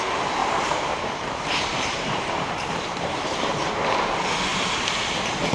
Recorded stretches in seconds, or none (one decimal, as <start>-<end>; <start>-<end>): 0.0-0.4; 3.7-5.5